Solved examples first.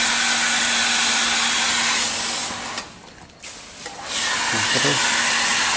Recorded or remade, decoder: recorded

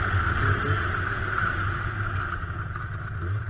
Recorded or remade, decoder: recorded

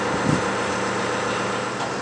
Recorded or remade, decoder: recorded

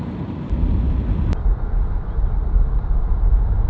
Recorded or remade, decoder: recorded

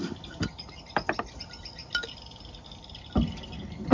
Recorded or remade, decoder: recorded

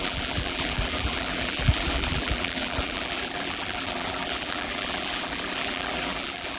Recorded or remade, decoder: remade, vocoder, BigVGAN v2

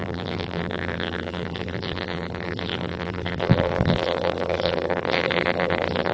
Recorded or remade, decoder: remade, vocoder, BigVGAN v2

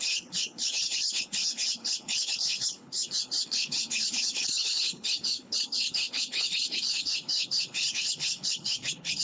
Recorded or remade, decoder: remade, codec, HILCodec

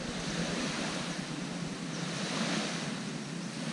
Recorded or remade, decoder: recorded